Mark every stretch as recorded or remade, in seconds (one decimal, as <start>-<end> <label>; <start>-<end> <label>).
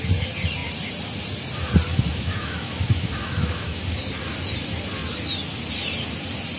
0.0-1.9 recorded; 1.9-4.0 remade; 4.0-6.6 recorded